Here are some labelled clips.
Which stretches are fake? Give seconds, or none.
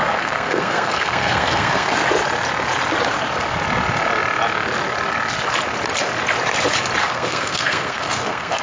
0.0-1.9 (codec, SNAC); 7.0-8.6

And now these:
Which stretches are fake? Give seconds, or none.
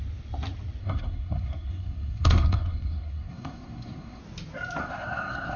0.8-4.2 (codec, SNAC); 4.8-5.6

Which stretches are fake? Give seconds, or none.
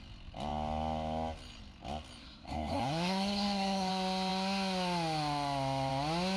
2.2-3.9 (codec, SNAC)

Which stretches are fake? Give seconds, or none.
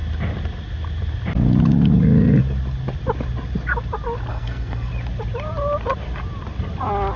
4.3-4.9 (codec, SNAC)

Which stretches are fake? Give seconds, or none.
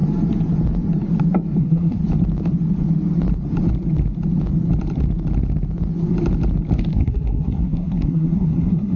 1.6-2.0 (codec, SNAC); 6.9-9.0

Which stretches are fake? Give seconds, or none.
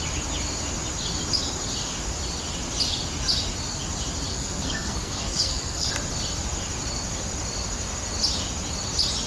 4.3-5.9 (codec, SNAC)